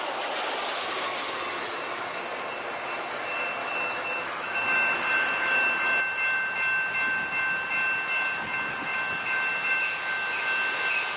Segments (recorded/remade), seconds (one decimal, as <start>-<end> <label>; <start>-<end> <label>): 0.0-1.6 recorded; 1.6-2.2 remade; 2.2-3.6 recorded; 3.6-5.0 remade; 5.0-11.2 recorded